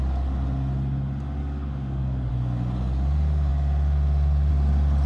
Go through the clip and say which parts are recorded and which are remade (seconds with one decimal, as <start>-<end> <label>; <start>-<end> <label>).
0.0-1.4 recorded; 1.4-2.3 remade; 2.3-5.1 recorded